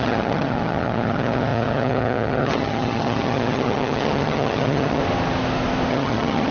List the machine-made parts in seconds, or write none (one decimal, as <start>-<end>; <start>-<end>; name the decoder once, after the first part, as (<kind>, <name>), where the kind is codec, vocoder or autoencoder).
0.0-5.0 (vocoder, HiFi-GAN); 5.9-6.5

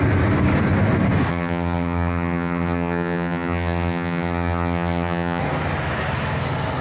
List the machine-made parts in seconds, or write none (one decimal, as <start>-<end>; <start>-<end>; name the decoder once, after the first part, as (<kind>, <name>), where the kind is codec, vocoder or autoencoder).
1.3-5.4 (vocoder, HiFi-GAN)

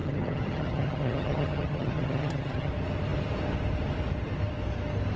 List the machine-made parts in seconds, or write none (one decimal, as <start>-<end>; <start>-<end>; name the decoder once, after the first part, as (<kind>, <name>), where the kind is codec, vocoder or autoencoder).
0.0-2.7 (vocoder, HiFi-GAN)

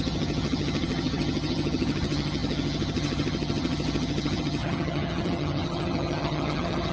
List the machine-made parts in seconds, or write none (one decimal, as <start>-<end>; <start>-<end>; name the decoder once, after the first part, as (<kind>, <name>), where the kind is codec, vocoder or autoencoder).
0.0-6.9 (vocoder, HiFi-GAN)

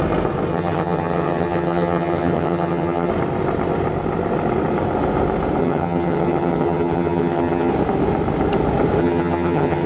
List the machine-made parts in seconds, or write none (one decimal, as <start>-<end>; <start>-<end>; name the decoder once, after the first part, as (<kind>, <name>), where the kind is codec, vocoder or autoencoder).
0.5-3.1 (vocoder, HiFi-GAN); 5.6-7.7; 9.0-9.9